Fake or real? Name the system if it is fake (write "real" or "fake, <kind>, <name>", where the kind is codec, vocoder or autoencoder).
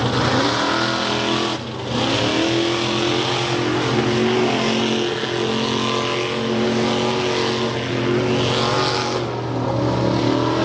real